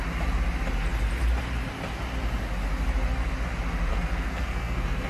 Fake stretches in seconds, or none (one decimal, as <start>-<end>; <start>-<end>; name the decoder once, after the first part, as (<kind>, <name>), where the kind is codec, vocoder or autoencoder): 3.9-5.1 (codec, SNAC)